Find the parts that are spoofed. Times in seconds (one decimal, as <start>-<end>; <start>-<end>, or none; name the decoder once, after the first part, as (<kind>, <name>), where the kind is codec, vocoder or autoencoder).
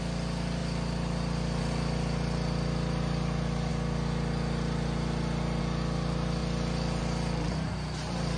0.6-1.6 (vocoder, BigVGAN v2)